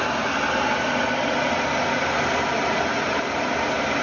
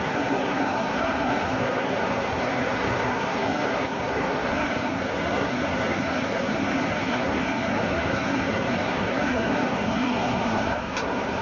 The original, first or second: first